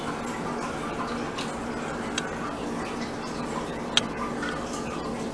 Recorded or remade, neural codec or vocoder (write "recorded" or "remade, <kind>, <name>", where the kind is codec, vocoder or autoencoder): recorded